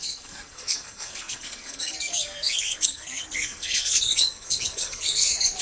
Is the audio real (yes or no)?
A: no